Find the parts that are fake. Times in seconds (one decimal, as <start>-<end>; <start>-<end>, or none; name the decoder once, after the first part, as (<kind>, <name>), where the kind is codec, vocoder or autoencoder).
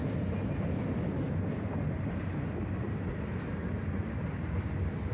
none